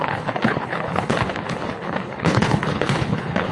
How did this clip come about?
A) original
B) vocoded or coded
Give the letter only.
B